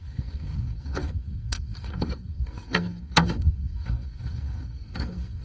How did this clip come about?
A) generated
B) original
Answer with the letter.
A